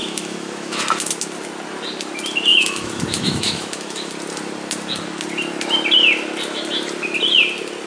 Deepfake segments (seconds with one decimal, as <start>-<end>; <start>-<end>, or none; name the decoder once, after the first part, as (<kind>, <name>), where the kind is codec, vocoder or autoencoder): 0.0-0.8 (autoencoder, DAC-VAE); 2.5-4.1